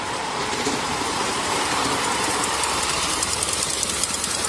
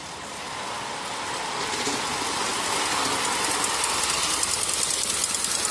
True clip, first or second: second